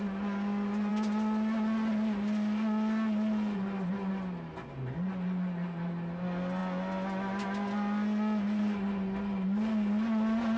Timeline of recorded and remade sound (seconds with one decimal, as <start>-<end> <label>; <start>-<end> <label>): 0.0-10.6 recorded